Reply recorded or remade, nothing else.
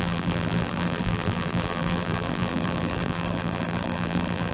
remade